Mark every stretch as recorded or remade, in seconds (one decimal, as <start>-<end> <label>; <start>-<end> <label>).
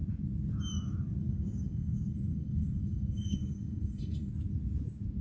0.0-1.2 recorded; 1.2-4.3 remade; 4.3-5.2 recorded